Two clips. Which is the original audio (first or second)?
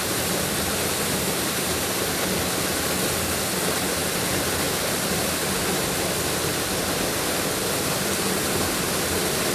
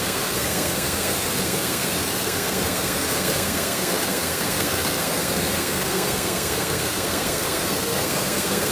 first